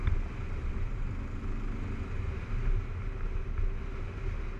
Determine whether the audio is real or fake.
real